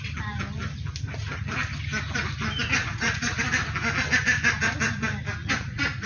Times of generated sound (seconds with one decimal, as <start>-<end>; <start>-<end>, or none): 2.8-3.4; 5.4-6.1

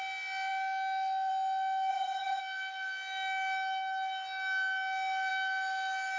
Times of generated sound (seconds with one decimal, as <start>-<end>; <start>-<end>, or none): 1.9-2.4

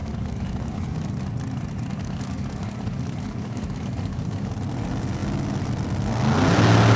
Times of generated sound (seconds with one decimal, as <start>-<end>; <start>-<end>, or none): 0.0-1.1; 1.9-4.5

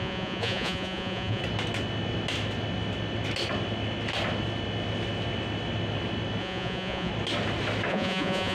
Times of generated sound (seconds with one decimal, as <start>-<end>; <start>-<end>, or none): 0.0-1.4; 6.4-7.1; 7.9-8.5